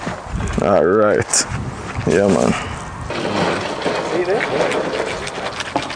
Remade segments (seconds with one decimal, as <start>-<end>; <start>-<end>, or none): none